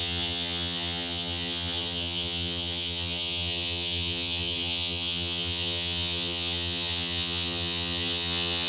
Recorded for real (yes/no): no